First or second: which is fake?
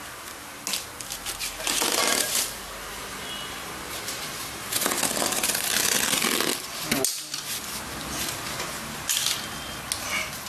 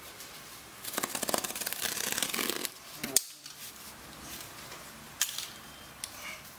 second